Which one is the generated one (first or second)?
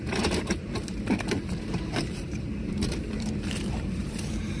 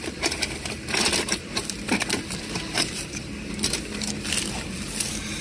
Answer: first